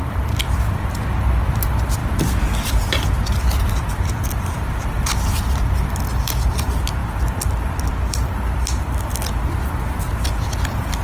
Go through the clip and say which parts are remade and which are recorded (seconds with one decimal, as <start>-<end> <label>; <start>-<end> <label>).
0.0-2.0 recorded; 2.0-5.3 remade; 5.3-7.0 recorded; 7.0-10.0 remade; 10.0-11.0 recorded